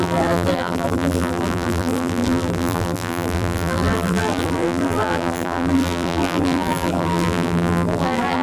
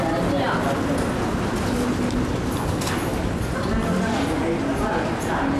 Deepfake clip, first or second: first